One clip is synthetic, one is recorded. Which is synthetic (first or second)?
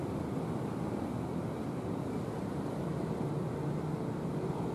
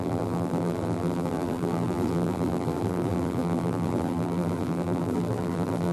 second